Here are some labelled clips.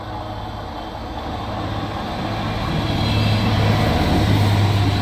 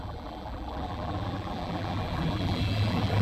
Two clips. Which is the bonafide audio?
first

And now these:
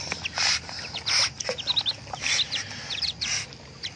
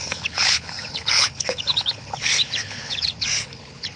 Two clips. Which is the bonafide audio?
first